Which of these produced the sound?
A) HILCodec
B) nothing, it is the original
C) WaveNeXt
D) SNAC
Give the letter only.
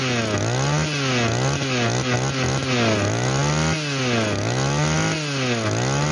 B